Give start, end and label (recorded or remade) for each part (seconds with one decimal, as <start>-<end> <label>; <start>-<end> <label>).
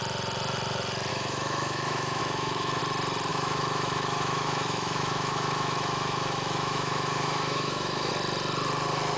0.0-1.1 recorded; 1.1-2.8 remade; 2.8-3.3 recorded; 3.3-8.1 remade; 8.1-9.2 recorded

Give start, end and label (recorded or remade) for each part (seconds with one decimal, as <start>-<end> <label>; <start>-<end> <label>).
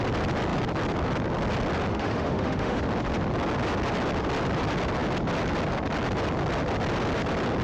0.0-1.9 recorded; 1.9-2.8 remade; 2.8-7.6 recorded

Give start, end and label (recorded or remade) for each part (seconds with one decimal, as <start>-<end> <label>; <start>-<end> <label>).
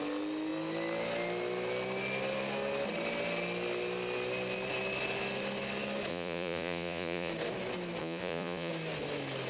0.0-6.1 recorded; 6.1-7.3 remade; 7.3-8.0 recorded; 8.0-8.7 remade; 8.7-9.5 recorded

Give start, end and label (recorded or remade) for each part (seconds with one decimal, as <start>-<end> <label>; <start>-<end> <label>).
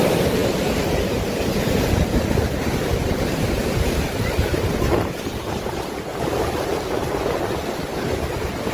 0.0-0.4 recorded; 0.4-5.1 remade; 5.1-6.1 recorded; 6.1-7.4 remade; 7.4-7.9 recorded; 7.9-8.7 remade